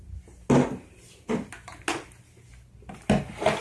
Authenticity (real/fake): real